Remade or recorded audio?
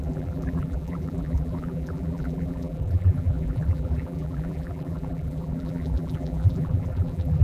remade